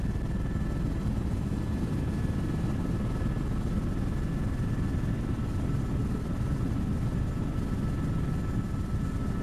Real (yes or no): yes